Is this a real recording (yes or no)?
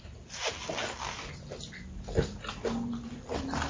yes